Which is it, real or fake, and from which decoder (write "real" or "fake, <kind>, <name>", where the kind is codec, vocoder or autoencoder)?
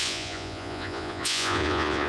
fake, vocoder, Vocos